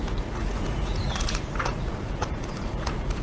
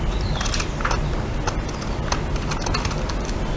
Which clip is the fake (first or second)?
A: first